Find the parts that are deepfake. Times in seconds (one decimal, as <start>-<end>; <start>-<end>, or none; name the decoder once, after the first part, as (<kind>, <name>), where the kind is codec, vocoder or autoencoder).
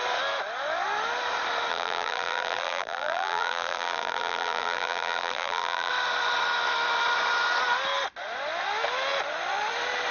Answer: 1.7-5.9 (vocoder, BigVGAN v2)